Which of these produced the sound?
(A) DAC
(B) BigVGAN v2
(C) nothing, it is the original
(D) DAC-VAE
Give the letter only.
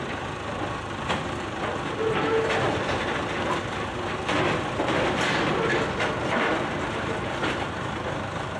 C